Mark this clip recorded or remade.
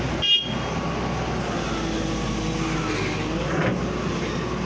recorded